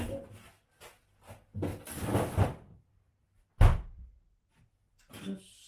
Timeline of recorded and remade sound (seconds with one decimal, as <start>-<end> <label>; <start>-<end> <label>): 0.0-1.7 recorded; 1.7-3.2 remade; 3.2-3.7 recorded; 3.7-4.6 remade; 4.6-5.7 recorded